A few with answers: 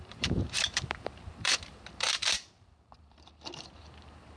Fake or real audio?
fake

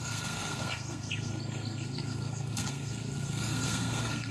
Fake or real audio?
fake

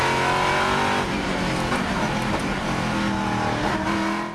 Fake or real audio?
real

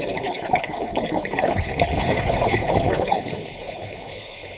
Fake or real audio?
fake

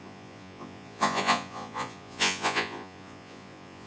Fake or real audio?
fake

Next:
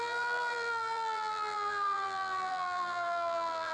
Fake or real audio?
fake